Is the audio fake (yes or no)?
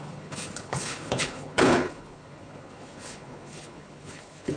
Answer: yes